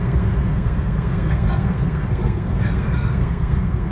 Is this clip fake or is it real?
fake